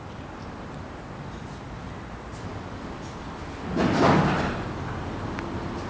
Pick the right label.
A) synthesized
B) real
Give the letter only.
B